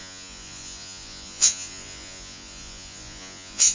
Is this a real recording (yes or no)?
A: no